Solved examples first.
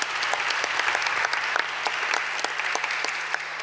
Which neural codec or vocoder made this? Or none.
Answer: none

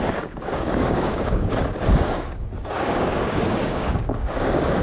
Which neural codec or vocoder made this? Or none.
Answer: codec, DAC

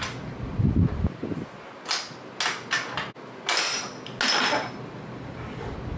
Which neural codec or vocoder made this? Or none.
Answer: none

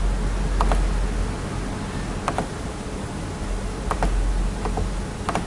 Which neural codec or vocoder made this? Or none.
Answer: none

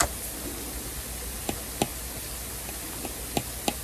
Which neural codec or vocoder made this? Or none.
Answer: none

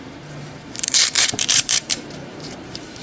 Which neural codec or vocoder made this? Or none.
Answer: vocoder, BigVGAN v2